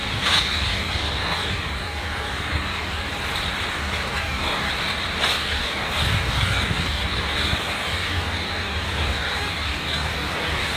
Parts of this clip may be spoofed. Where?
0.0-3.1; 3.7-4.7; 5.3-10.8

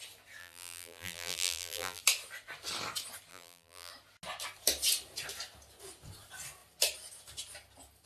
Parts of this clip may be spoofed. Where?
0.4-2.0; 3.3-3.9

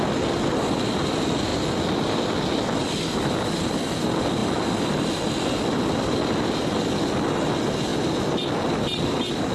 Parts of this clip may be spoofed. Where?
none

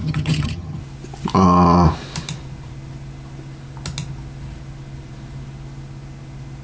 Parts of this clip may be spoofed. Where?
0.0-0.8

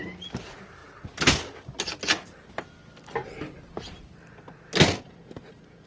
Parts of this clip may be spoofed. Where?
none

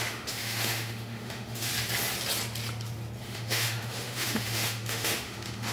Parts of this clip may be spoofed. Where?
0.0-1.7; 3.2-5.7

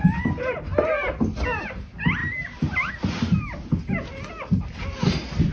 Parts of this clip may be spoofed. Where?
none